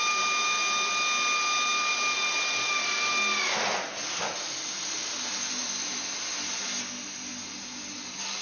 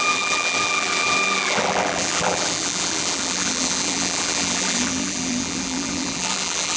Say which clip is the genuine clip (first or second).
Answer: first